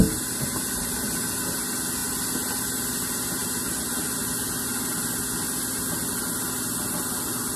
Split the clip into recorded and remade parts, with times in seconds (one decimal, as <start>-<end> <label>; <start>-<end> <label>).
0.0-3.4 recorded; 3.4-4.3 remade; 4.3-7.6 recorded

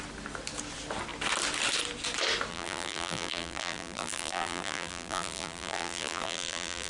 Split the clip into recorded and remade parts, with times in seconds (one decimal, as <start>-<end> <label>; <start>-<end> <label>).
0.0-2.5 recorded; 2.5-6.9 remade

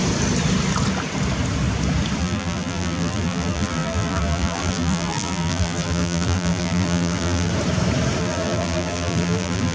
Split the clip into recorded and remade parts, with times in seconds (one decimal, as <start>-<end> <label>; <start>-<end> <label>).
0.0-2.2 recorded; 2.2-7.5 remade; 7.5-8.2 recorded; 8.2-9.7 remade

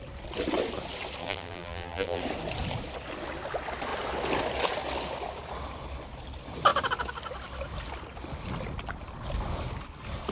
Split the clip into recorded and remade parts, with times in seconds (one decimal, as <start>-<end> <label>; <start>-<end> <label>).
0.0-1.2 recorded; 1.2-2.2 remade; 2.2-10.3 recorded

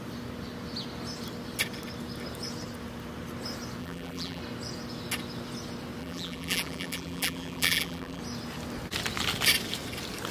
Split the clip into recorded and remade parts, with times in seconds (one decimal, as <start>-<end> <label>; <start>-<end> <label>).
0.0-3.8 recorded; 3.8-4.4 remade; 4.4-6.0 recorded; 6.0-8.2 remade; 8.2-10.3 recorded

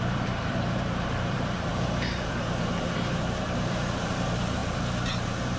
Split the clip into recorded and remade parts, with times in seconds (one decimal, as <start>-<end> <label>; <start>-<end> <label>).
0.0-5.6 remade